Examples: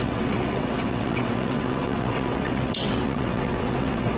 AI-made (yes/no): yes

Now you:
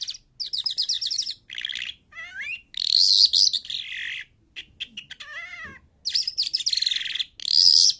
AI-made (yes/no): no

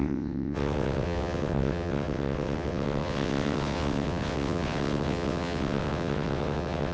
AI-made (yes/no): yes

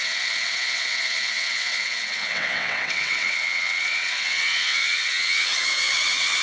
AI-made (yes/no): yes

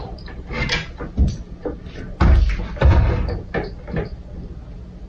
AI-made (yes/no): no